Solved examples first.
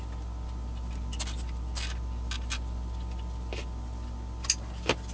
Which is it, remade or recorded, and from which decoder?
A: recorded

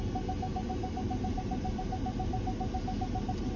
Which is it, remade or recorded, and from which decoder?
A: recorded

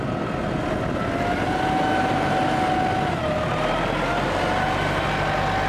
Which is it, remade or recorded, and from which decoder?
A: recorded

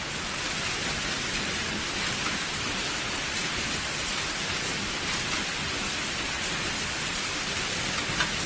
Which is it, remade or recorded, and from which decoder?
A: recorded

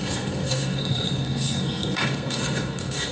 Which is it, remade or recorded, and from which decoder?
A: remade, codec, SNAC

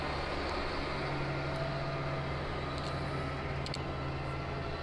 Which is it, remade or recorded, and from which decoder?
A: recorded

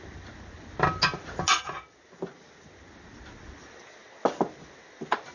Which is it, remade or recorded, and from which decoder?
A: recorded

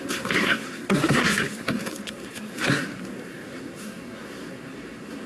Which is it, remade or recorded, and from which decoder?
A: remade, codec, SNAC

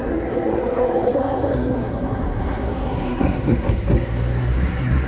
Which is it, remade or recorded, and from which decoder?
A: remade, codec, SNAC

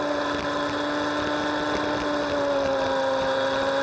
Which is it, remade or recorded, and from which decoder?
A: recorded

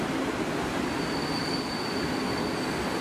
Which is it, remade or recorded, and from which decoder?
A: recorded